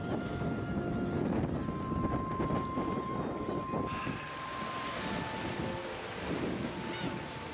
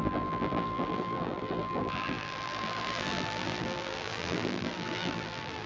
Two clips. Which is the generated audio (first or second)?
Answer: second